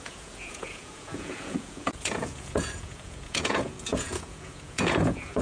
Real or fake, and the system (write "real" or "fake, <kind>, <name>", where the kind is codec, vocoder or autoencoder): fake, vocoder, Vocos